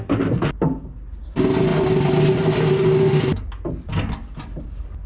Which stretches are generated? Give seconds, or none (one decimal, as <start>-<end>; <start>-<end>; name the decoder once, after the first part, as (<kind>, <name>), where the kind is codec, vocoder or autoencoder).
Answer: none